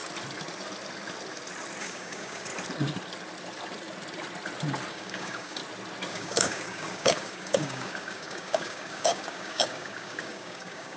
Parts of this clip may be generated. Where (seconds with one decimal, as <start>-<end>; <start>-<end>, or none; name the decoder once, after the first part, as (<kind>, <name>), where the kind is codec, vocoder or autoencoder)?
1.8-2.5 (codec, DAC); 4.9-5.6; 6.1-11.0